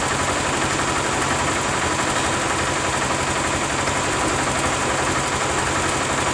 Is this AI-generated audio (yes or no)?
no